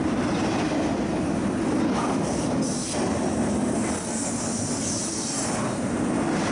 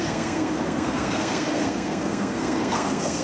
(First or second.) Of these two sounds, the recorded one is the first